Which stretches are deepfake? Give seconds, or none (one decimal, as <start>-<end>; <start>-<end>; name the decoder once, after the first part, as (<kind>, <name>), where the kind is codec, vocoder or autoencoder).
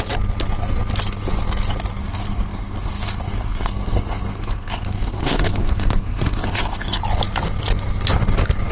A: 2.0-7.0 (codec, SNAC)